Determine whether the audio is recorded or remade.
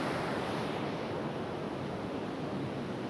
remade